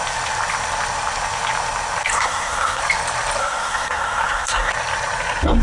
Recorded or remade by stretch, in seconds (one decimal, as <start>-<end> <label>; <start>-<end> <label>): 0.0-2.1 recorded; 2.1-2.8 remade; 2.8-3.4 recorded; 3.4-4.7 remade; 4.7-5.6 recorded